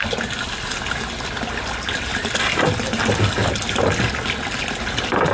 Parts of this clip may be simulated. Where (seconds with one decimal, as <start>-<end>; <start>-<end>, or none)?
none